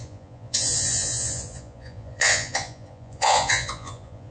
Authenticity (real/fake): fake